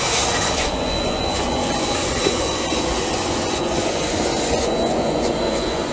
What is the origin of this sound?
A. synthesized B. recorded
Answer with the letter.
A